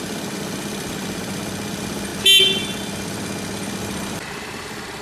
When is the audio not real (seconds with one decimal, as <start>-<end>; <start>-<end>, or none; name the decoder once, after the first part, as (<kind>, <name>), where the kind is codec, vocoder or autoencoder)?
0.0-2.1 (vocoder, BigVGAN v2); 3.8-5.0